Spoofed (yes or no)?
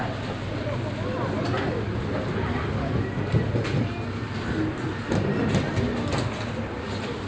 no